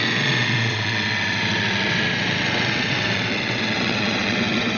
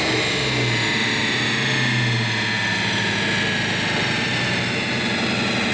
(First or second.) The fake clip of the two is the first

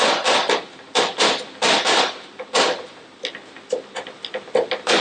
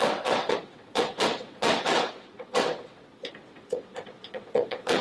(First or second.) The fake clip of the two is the second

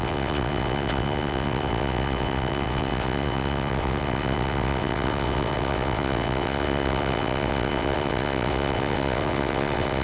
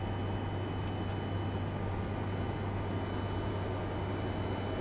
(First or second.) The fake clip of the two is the first